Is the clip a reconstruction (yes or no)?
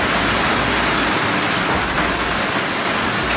no